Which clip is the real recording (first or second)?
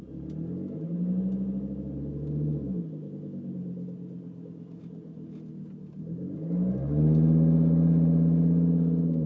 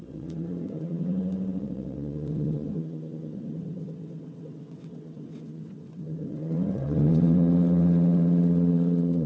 first